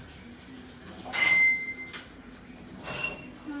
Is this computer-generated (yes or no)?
no